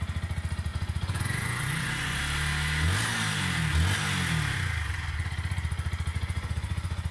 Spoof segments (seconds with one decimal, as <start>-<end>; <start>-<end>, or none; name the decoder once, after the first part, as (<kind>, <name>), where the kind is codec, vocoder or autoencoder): 0.7-2.2 (vocoder, Vocos); 6.1-7.1